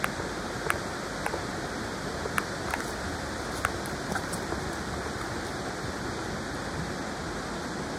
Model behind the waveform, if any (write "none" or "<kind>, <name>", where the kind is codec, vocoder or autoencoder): none